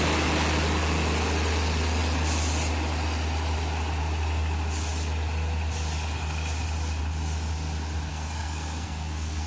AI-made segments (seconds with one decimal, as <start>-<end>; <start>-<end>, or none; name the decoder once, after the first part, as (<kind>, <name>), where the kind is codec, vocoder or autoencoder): 8.1-9.5 (codec, SNAC)